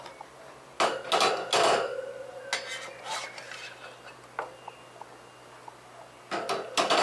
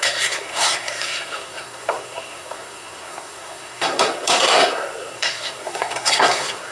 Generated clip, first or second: second